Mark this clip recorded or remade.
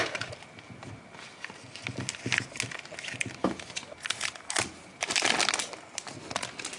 recorded